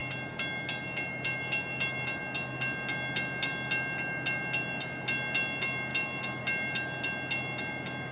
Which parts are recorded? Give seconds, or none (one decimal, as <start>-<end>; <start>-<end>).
0.0-8.1